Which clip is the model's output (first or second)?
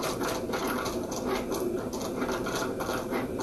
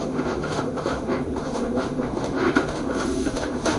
second